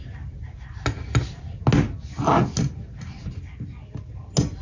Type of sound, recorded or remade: recorded